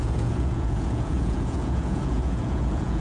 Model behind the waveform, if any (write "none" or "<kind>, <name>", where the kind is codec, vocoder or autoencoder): vocoder, Vocos